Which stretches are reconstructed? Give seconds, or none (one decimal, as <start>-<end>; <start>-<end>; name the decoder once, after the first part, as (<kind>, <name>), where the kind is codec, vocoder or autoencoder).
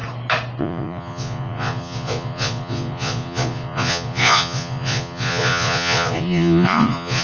0.6-7.2 (vocoder, Vocos)